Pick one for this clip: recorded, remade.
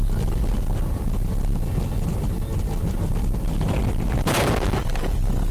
recorded